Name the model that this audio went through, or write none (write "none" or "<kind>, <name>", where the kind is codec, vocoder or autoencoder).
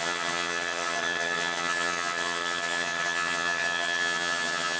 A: vocoder, HiFi-GAN